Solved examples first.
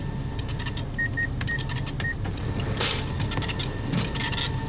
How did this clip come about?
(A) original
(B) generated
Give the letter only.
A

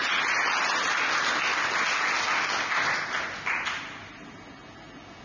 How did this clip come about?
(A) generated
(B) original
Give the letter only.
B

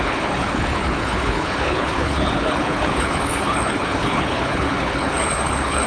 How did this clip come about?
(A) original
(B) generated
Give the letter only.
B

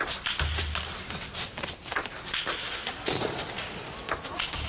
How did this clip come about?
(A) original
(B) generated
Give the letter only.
A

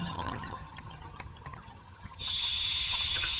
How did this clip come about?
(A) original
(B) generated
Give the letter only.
B